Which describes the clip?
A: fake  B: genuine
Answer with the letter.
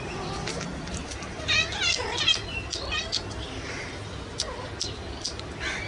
B